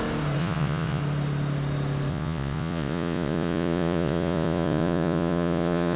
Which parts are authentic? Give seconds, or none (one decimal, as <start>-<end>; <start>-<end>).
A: 0.0-0.4; 1.0-2.1